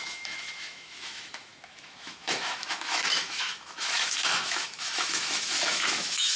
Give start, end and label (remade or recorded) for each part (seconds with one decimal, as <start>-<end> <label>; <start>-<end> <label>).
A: 0.0-6.4 remade